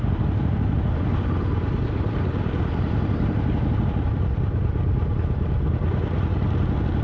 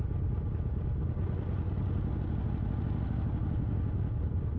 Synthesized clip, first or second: first